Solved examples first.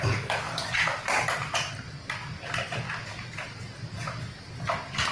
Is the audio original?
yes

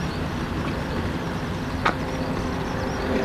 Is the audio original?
yes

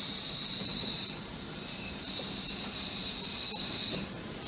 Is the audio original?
no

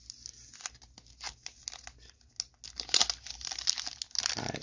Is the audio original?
yes